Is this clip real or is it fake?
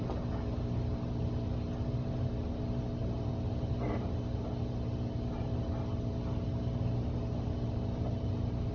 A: real